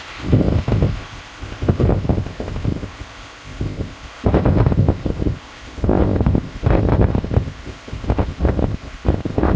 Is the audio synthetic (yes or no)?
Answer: yes